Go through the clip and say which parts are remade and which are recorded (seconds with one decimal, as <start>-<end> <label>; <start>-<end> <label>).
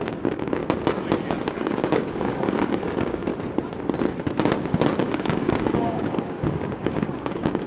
0.0-0.6 remade; 0.6-1.5 recorded; 1.5-3.3 remade; 3.3-5.0 recorded; 5.0-7.7 remade